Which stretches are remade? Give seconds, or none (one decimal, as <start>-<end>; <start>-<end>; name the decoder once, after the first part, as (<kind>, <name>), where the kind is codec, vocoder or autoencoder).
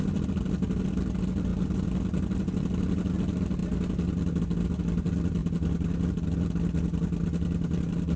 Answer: none